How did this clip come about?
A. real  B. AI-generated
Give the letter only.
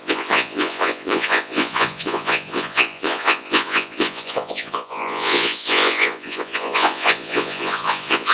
B